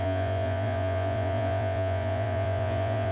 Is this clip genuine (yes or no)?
no